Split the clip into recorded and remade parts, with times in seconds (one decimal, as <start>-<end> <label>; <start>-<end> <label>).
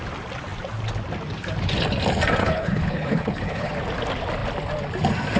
0.0-2.4 recorded; 2.4-3.7 remade; 3.7-5.4 recorded